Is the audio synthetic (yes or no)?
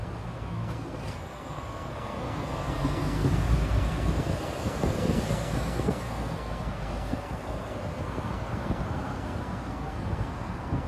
yes